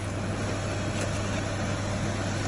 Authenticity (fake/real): real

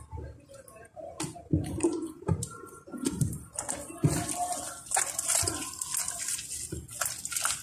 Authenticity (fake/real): real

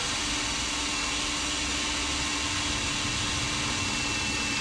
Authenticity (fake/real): real